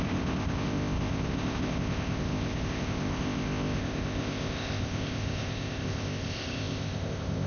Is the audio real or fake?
fake